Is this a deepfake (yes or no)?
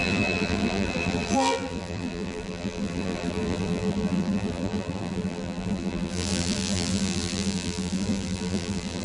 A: yes